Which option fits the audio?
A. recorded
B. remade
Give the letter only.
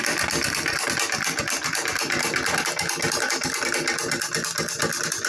A